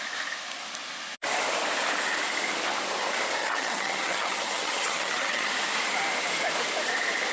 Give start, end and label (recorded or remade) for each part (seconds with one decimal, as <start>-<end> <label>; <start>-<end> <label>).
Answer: 0.0-3.4 recorded; 3.4-5.5 remade; 5.5-7.3 recorded